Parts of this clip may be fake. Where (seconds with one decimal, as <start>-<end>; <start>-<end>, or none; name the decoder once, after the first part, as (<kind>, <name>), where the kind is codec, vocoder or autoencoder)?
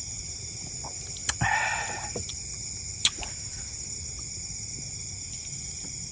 none